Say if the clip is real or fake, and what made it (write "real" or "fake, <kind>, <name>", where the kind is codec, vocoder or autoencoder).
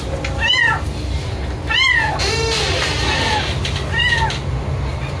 real